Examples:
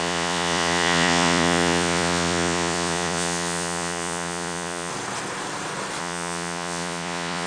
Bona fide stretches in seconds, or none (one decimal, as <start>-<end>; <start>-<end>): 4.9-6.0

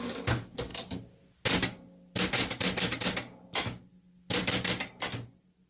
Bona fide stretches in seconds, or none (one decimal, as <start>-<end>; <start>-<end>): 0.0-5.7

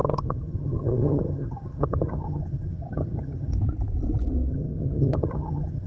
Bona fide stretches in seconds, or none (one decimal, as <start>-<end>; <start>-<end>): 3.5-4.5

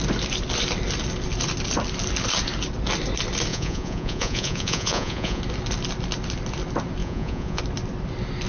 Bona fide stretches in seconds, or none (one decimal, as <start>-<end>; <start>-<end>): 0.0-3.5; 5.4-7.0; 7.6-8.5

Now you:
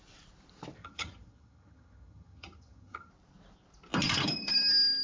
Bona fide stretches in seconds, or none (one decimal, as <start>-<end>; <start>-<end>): 0.0-0.8; 3.1-5.0

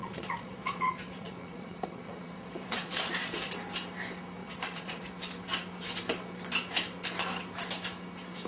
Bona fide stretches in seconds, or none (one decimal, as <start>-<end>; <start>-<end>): 3.5-4.4; 5.1-8.5

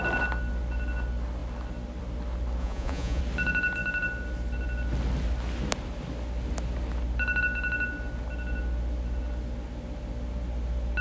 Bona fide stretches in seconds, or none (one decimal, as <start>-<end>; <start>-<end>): 0.0-2.6; 3.2-11.0